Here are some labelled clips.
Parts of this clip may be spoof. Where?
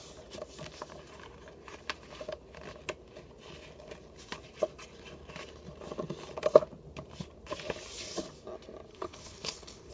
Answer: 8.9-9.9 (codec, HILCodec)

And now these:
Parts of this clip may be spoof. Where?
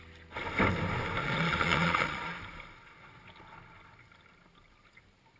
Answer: 1.2-2.4 (vocoder, Vocos)